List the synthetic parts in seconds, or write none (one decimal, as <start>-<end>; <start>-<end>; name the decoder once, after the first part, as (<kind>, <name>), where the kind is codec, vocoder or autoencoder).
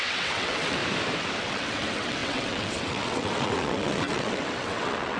0.0-0.8 (vocoder, WaveNeXt); 1.4-5.2